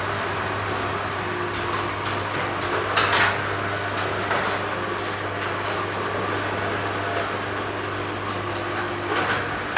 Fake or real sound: real